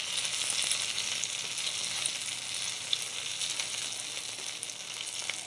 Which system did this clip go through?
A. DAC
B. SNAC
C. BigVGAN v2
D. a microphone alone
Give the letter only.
D